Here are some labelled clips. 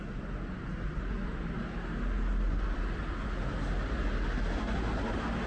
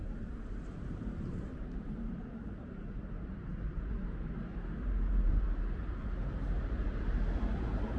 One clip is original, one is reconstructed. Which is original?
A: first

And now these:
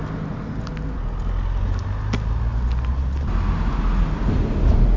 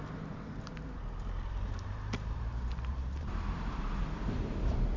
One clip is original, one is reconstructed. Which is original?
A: first